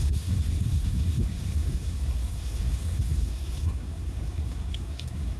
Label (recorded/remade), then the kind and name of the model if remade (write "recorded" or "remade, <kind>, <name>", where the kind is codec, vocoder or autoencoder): remade, codec, SNAC